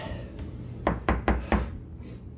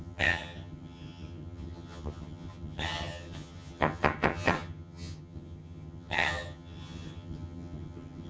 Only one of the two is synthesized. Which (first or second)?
second